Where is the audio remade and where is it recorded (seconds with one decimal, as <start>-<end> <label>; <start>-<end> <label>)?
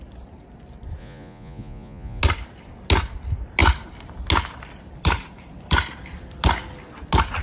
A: 0.0-1.0 recorded; 1.0-2.2 remade; 2.2-7.4 recorded